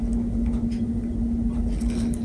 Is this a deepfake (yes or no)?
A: no